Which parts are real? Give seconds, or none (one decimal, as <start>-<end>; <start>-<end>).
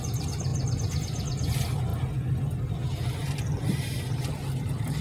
0.0-3.2